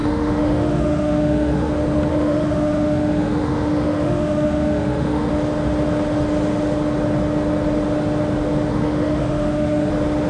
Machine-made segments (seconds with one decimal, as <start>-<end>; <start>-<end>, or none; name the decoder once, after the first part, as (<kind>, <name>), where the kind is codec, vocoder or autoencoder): 0.0-1.7 (autoencoder, DAC-VAE); 2.1-5.3; 8.7-9.9